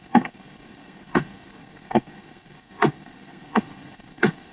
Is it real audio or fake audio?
fake